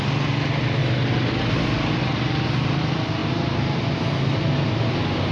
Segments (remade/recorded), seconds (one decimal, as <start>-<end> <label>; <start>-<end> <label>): 0.0-5.3 recorded